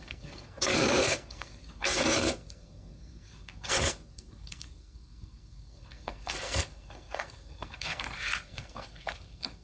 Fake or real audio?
fake